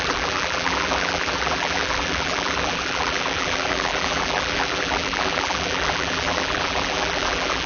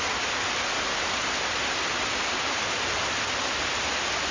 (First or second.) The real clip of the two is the second